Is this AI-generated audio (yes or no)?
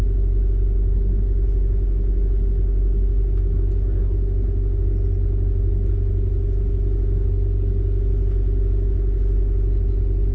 no